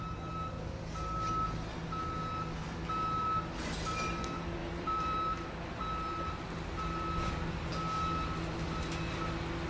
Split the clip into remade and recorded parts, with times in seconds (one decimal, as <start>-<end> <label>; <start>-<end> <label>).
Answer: 0.0-4.6 recorded; 4.6-5.2 remade; 5.2-9.7 recorded